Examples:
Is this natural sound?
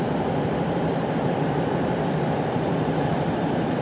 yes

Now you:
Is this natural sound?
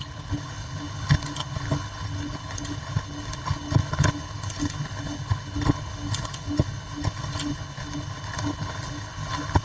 no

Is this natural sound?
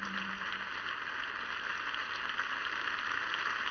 yes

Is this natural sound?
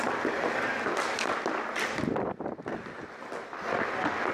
yes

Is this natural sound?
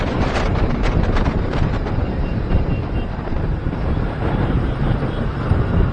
no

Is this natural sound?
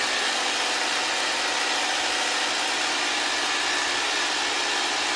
yes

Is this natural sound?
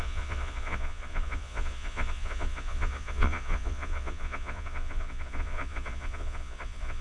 no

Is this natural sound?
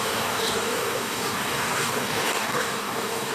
no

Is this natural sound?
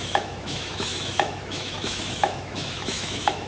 no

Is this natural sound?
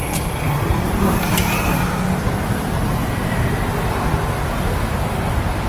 yes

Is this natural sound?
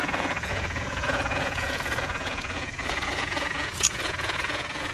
no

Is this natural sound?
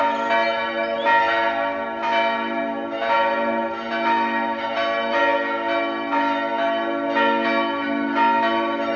yes